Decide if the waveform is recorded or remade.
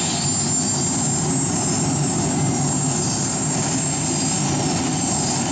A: recorded